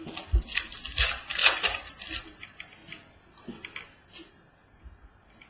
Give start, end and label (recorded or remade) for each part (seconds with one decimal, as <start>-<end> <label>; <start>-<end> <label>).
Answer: 0.0-5.5 recorded